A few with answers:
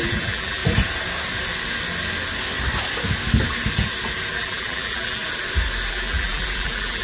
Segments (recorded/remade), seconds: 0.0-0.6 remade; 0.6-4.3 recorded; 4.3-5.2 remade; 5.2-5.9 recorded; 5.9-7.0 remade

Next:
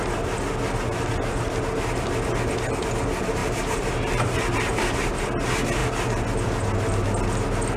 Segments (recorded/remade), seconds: 0.0-3.4 recorded; 3.4-5.2 remade; 5.2-7.8 recorded